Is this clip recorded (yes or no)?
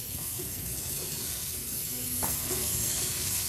no